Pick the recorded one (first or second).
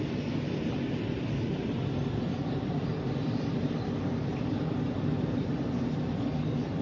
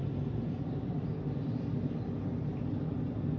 second